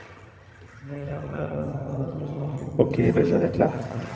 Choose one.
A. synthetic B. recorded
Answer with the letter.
A